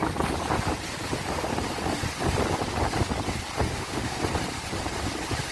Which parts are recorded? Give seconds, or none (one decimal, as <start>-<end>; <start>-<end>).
0.0-3.7; 4.2-5.5